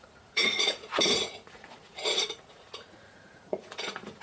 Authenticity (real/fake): fake